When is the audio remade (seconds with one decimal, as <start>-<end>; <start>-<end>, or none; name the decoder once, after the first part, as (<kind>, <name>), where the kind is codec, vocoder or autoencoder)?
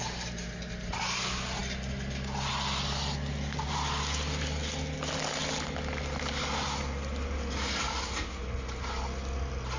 none